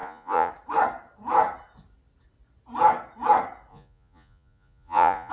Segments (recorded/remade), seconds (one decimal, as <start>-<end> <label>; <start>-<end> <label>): 0.0-0.5 remade; 0.5-3.7 recorded; 3.7-5.3 remade